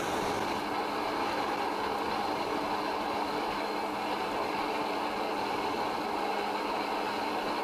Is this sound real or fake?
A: real